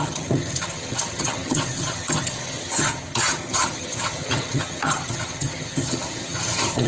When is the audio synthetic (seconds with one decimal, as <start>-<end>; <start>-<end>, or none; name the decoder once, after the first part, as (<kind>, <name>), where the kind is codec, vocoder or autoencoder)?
0.0-6.9 (vocoder, HiFi-GAN)

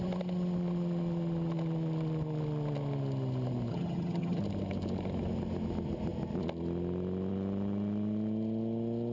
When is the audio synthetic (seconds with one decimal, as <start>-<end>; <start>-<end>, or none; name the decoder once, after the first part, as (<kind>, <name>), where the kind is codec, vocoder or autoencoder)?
3.7-4.4 (vocoder, HiFi-GAN)

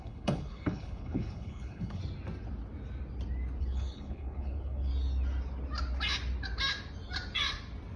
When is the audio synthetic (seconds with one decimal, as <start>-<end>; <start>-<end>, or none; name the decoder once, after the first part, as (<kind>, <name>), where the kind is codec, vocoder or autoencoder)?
0.0-2.0 (codec, HILCodec); 3.6-4.9

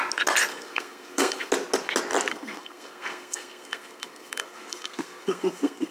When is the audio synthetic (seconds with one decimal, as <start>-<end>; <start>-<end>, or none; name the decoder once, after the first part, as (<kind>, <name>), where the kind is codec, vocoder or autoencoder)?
0.5-1.5 (codec, SNAC); 2.3-5.9

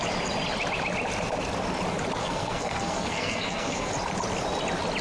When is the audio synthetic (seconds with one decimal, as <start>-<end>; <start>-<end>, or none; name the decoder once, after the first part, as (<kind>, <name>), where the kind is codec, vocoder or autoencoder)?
2.2-3.9 (codec, SNAC)

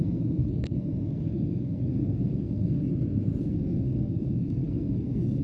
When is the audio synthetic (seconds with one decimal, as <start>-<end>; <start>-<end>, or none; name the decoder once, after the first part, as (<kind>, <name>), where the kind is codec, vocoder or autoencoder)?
0.0-2.9 (codec, SNAC); 3.4-5.4

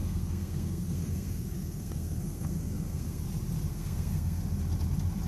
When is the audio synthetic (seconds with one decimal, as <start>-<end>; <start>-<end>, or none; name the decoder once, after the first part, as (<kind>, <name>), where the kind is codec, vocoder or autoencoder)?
0.0-3.2 (codec, SNAC); 3.7-4.4